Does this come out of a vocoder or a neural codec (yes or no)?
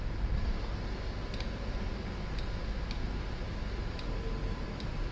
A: no